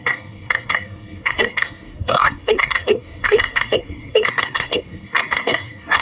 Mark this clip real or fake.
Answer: fake